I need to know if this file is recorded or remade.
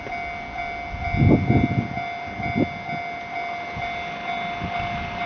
recorded